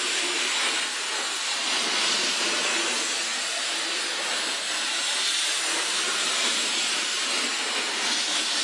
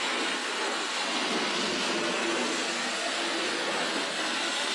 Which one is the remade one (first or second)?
first